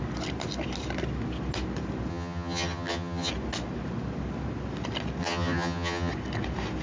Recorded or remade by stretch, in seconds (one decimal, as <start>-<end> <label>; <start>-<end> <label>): 0.0-2.1 recorded; 2.1-3.3 remade; 3.3-5.2 recorded; 5.2-6.1 remade; 6.1-6.8 recorded